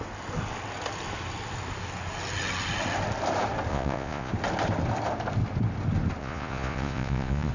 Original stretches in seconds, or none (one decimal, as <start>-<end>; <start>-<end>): 0.0-3.7; 4.3-6.2